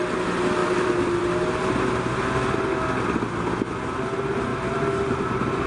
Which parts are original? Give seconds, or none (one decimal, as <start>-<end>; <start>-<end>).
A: 0.0-0.6; 1.2-4.5; 5.3-5.7